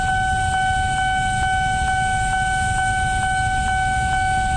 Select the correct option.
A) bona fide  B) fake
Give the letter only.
A